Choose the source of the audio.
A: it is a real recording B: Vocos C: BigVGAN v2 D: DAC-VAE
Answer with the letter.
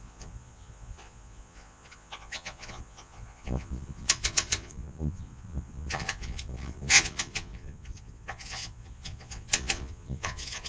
B